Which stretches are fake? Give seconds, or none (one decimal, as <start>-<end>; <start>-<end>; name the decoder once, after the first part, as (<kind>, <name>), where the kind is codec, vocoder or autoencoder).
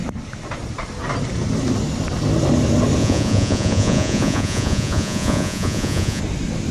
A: 3.0-6.2 (vocoder, Vocos)